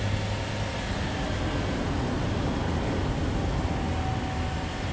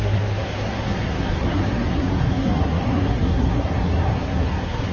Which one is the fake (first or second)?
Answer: second